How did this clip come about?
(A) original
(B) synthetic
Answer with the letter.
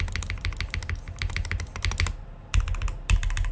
A